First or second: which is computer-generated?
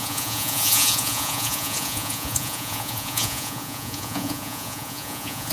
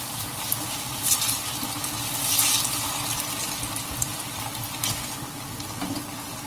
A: first